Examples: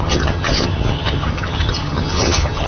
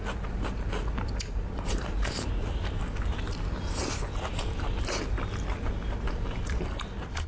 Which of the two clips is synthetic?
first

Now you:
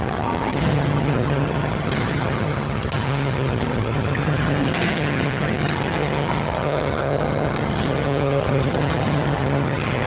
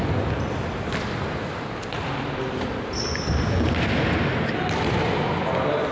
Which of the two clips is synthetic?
first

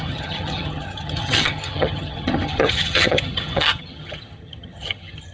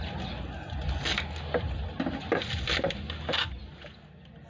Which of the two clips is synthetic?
first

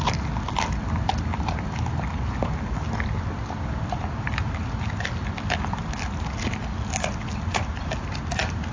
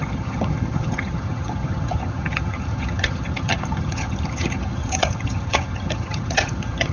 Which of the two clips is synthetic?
second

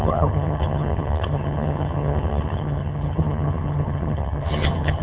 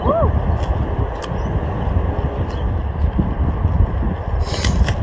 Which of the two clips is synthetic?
first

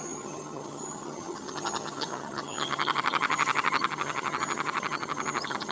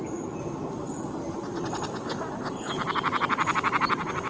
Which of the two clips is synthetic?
first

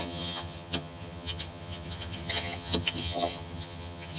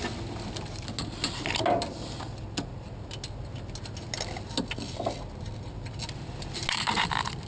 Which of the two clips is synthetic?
first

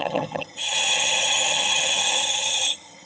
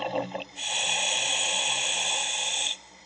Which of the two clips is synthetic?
first